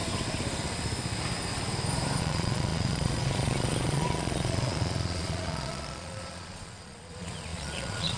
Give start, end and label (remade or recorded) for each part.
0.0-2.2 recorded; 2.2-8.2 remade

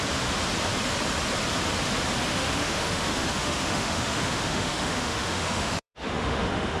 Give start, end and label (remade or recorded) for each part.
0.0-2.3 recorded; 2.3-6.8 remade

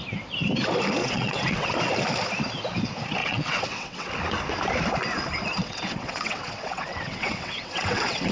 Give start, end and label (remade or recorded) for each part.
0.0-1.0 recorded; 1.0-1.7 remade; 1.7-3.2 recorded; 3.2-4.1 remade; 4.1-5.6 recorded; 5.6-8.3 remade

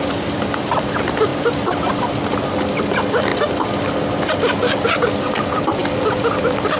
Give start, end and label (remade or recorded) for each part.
0.0-6.8 remade

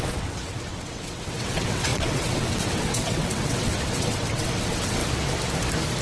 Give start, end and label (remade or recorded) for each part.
0.0-5.0 remade; 5.0-6.0 recorded

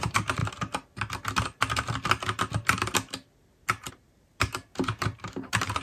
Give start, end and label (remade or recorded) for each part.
0.0-0.4 remade; 0.4-3.9 recorded; 3.9-5.8 remade